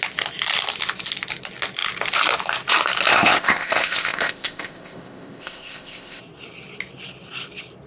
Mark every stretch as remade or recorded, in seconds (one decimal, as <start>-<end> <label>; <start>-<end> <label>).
0.0-3.1 recorded; 3.1-6.2 remade; 6.2-7.9 recorded